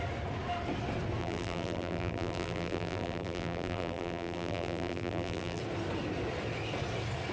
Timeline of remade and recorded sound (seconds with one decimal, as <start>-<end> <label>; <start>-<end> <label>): 0.0-1.2 recorded; 1.2-5.6 remade; 5.6-7.3 recorded